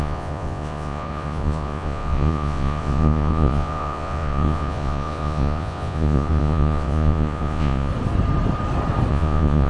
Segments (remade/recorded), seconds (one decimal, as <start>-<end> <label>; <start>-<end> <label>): 0.0-7.9 remade; 7.9-9.1 recorded; 9.1-9.7 remade